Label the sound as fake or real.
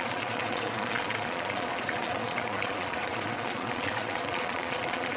fake